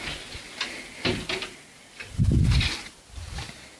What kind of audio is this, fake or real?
real